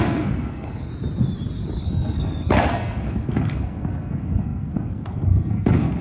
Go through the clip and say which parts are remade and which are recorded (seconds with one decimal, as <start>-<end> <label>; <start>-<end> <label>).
0.0-0.9 remade; 0.9-1.8 recorded; 1.8-6.0 remade

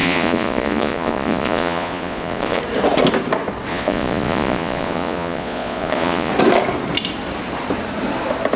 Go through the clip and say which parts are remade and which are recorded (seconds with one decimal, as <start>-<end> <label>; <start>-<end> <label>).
0.0-2.6 remade; 2.6-3.7 recorded; 3.7-6.3 remade; 6.3-8.6 recorded

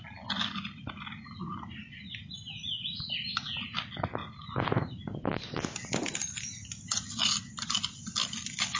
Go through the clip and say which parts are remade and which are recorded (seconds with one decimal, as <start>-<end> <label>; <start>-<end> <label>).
0.0-4.2 recorded; 4.2-5.0 remade; 5.0-8.8 recorded

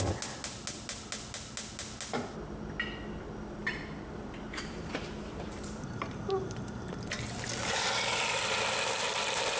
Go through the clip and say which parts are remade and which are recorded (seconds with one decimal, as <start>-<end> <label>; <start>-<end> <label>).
0.0-3.6 recorded; 3.6-6.9 remade; 6.9-9.6 recorded